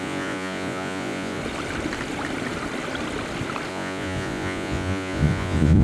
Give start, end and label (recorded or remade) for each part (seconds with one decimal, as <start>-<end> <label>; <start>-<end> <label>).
0.0-1.4 remade; 1.4-3.7 recorded; 3.7-5.8 remade